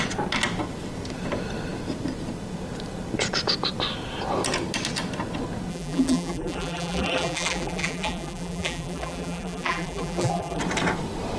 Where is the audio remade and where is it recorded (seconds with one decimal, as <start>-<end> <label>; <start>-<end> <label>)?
0.0-5.7 recorded; 5.7-10.6 remade; 10.6-11.4 recorded